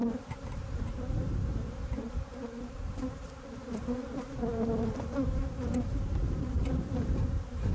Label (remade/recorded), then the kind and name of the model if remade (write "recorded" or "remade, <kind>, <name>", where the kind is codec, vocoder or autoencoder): remade, vocoder, BigVGAN v2